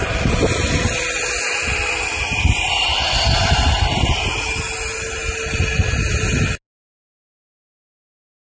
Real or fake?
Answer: real